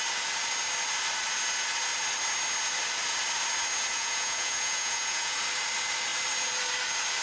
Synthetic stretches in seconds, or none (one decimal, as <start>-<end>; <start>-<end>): 3.9-5.4